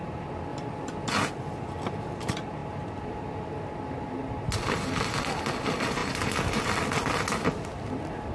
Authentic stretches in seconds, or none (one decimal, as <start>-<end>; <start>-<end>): 0.0-0.5; 1.1-2.6; 3.6-8.3